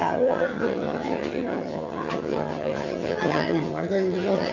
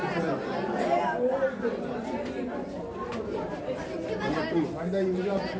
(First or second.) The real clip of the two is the second